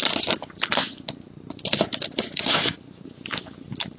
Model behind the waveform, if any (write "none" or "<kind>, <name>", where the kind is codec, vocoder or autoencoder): none